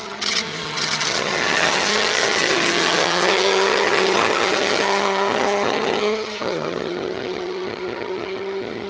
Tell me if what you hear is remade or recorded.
remade